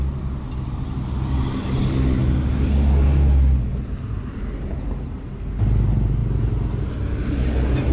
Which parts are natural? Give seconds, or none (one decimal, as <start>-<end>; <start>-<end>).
0.0-7.9